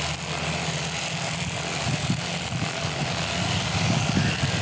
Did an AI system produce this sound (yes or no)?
no